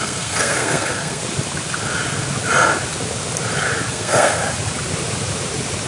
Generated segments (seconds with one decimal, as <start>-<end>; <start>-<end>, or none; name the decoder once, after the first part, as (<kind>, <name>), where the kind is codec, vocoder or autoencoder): 0.0-1.2 (codec, SNAC); 3.9-4.4